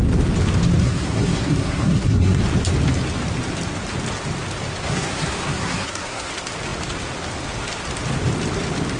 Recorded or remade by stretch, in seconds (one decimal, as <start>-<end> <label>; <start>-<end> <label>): 0.0-0.8 recorded; 0.8-2.4 remade; 2.4-4.9 recorded; 4.9-6.3 remade; 6.3-9.0 recorded